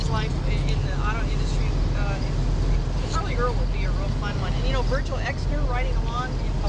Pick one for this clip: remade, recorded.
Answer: recorded